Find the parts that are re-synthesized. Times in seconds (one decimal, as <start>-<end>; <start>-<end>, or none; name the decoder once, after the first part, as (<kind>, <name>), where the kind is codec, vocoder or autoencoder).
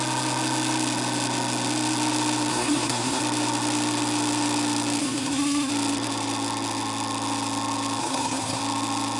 2.5-3.2 (codec, SNAC); 5.0-5.7; 8.0-8.6